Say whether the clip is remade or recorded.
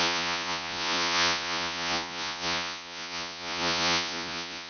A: remade